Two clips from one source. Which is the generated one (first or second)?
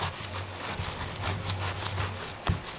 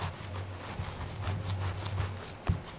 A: first